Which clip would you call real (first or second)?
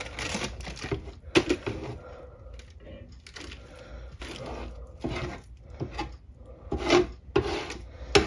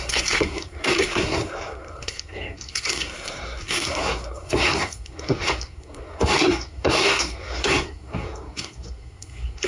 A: first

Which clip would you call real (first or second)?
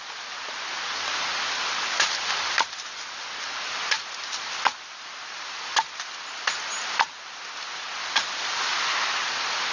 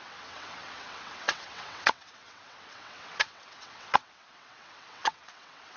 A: first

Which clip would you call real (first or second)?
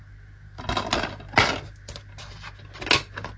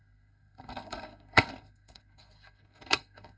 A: first